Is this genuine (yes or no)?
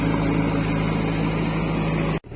yes